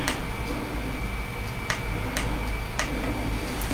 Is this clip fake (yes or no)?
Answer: no